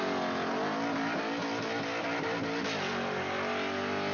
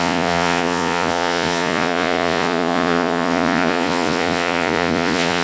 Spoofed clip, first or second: second